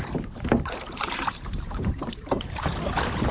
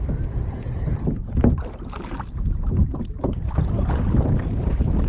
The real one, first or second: second